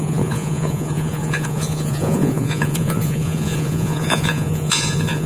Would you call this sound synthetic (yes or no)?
yes